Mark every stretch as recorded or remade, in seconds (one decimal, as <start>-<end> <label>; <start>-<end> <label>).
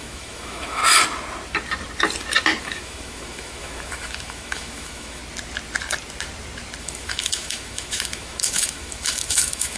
0.0-0.8 remade; 0.8-2.6 recorded; 2.6-5.2 remade; 5.2-6.8 recorded; 6.8-9.8 remade